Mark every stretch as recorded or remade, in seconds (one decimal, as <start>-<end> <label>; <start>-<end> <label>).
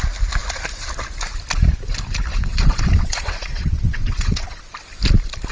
0.0-2.3 recorded; 2.3-4.6 remade; 4.6-5.5 recorded